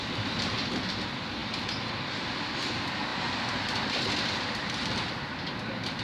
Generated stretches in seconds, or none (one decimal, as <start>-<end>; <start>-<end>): 1.4-2.7; 3.1-4.7

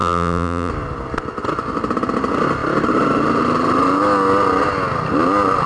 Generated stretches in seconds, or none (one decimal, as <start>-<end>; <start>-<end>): 0.0-0.7